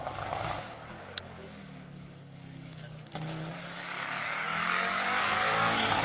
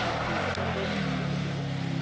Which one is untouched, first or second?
second